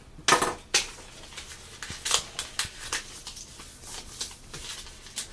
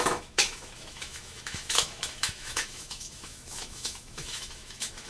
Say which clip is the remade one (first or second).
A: second